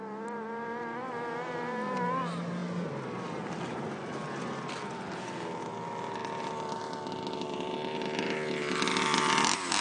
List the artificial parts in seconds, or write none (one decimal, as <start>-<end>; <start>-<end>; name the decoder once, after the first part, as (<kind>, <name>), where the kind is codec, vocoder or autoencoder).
none